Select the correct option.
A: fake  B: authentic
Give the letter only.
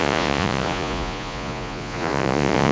A